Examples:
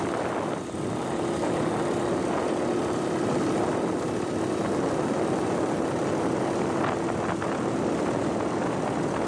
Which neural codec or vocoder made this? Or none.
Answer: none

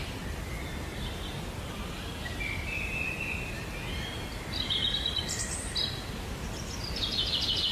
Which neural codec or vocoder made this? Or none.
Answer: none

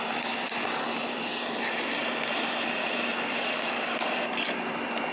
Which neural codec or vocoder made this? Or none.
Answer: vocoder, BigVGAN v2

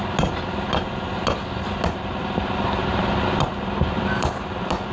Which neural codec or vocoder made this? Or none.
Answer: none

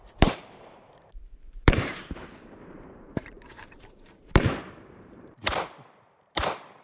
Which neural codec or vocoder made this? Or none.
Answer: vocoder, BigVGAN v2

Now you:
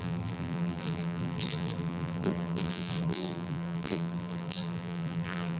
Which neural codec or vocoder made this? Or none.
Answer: vocoder, BigVGAN v2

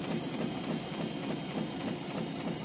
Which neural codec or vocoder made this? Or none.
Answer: vocoder, BigVGAN v2